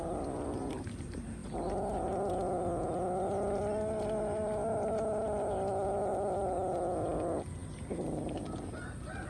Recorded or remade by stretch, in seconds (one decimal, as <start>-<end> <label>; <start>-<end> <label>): 0.0-6.1 recorded; 6.1-6.7 remade; 6.7-9.3 recorded